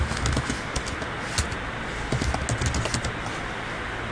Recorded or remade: recorded